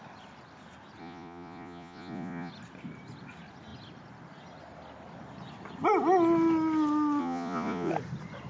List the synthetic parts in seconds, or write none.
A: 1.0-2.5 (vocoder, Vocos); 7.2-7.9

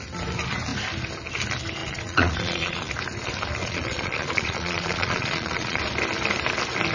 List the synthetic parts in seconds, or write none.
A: 1.8-2.9 (vocoder, Vocos); 3.6-5.8

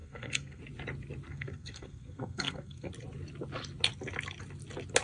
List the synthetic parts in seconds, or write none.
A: 0.0-0.6 (codec, SNAC); 1.3-2.9

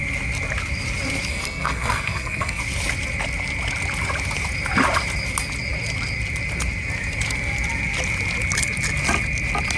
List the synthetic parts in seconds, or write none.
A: 1.3-2.6 (codec, SNAC)

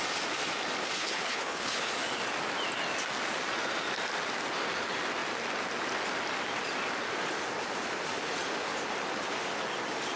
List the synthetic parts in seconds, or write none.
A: 1.0-1.9 (codec, HILCodec)

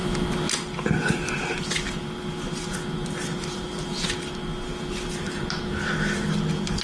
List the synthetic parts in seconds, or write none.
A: none

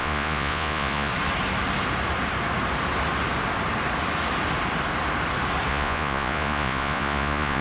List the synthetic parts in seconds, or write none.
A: 0.0-1.1 (vocoder, Vocos); 5.7-7.6

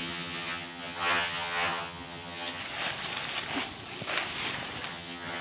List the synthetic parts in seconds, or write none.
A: 0.0-2.6 (vocoder, HiFi-GAN); 4.9-5.4